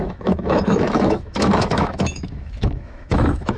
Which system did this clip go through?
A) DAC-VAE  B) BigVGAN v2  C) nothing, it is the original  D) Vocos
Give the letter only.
A